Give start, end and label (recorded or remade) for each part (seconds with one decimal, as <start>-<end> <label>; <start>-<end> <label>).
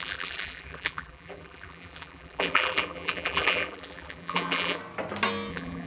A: 0.0-4.8 remade; 4.8-5.5 recorded; 5.5-5.9 remade